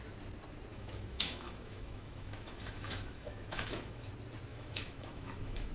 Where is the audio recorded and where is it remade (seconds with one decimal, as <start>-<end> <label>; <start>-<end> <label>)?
0.0-0.7 recorded; 0.7-4.1 remade; 4.1-4.5 recorded; 4.5-5.7 remade